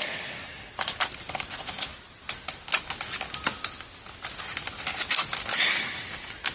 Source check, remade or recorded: recorded